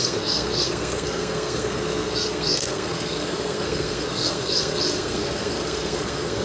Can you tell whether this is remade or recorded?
remade